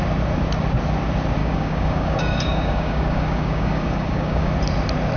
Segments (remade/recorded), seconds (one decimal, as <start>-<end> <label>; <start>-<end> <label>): 0.0-1.4 recorded; 1.4-4.5 remade; 4.5-5.2 recorded